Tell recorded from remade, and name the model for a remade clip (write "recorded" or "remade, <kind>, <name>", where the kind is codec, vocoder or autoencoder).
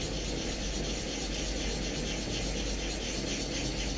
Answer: recorded